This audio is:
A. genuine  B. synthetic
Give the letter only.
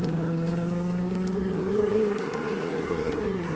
B